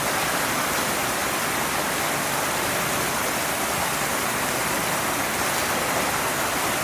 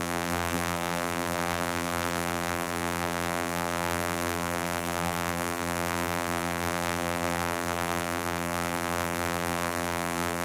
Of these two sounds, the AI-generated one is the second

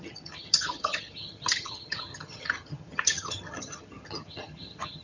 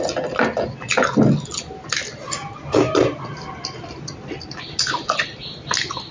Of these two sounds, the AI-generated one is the first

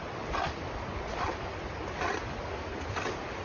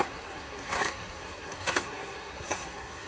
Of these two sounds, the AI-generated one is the second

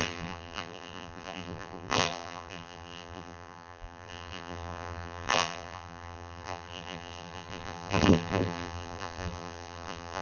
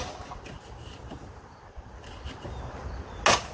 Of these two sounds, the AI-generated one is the first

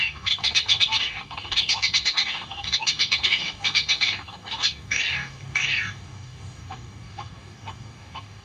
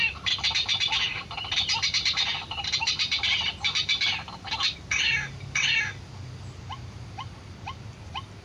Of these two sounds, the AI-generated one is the first